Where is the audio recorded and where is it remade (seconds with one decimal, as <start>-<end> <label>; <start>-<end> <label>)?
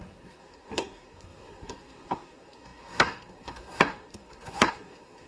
0.0-5.3 remade